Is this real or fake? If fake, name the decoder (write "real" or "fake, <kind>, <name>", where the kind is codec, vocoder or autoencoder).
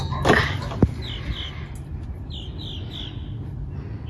real